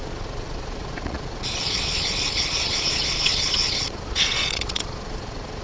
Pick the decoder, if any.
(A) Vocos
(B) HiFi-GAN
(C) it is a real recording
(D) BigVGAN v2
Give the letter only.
A